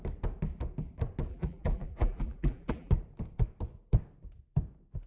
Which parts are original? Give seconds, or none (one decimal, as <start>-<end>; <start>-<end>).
0.0-1.3; 2.9-5.1